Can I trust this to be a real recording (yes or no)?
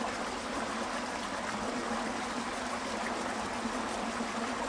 yes